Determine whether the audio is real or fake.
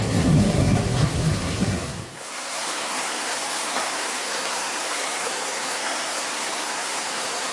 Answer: fake